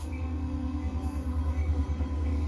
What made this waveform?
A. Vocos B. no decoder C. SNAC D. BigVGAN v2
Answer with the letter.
C